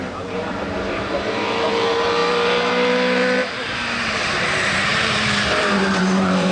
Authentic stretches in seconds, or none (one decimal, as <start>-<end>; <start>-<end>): none